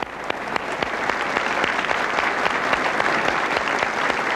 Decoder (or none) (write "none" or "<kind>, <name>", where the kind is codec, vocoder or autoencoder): none